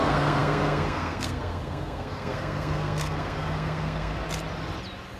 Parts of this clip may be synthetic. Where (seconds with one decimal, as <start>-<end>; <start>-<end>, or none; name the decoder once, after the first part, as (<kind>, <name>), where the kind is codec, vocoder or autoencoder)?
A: 0.0-4.1 (codec, SNAC)